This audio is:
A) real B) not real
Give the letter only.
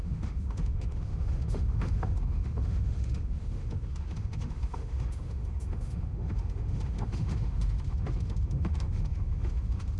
B